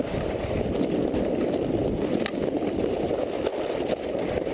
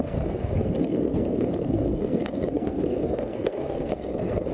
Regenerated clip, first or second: second